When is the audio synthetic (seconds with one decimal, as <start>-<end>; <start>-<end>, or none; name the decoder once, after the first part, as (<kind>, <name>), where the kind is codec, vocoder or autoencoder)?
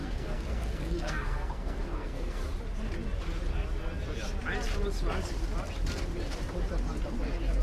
0.0-2.4 (codec, SNAC)